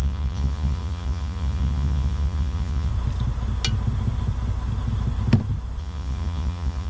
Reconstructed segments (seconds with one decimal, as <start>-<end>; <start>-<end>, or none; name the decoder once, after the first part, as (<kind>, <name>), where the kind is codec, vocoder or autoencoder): 0.0-2.9 (vocoder, Vocos); 5.8-6.9